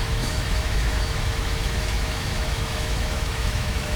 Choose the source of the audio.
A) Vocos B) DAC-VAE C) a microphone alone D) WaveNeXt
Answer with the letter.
B